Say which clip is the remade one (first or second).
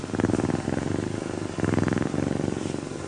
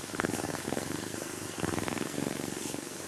second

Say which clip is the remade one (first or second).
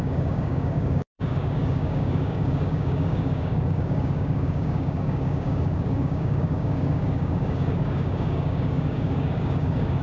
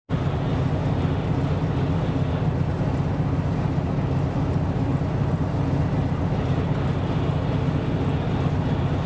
first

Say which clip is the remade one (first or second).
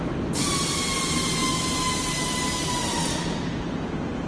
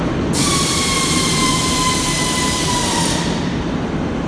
second